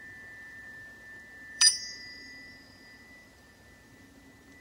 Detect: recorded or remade remade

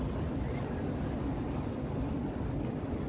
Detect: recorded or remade recorded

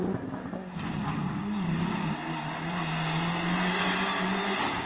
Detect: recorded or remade recorded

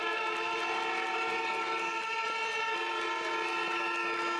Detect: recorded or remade recorded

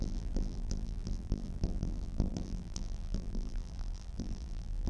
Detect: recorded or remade remade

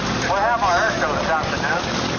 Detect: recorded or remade recorded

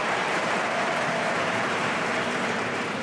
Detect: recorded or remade remade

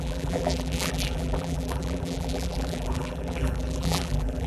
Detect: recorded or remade remade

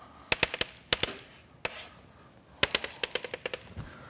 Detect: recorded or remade recorded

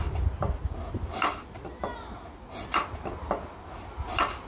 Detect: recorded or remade recorded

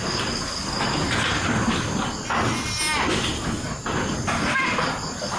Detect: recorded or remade recorded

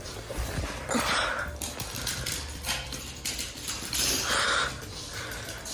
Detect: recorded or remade remade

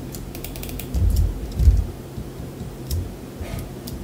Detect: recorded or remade remade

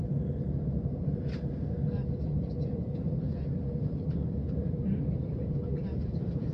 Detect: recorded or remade remade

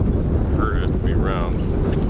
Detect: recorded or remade recorded